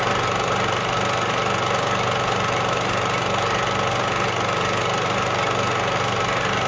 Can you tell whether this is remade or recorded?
recorded